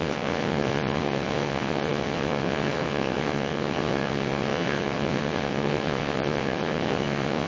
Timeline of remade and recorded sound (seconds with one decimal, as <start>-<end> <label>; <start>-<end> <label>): 0.0-7.5 remade